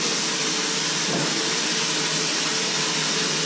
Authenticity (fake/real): real